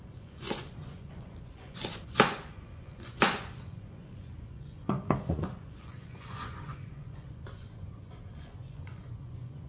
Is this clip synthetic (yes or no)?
yes